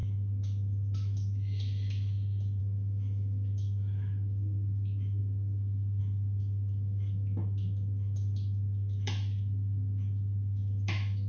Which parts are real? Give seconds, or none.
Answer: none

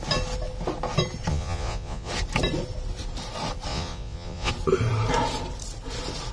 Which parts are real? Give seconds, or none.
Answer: 0.0-1.3; 2.1-3.7; 4.5-6.3

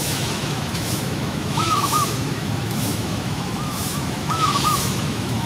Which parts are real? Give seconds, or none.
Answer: none